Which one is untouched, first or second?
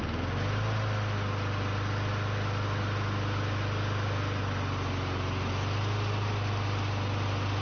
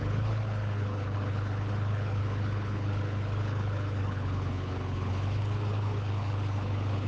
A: first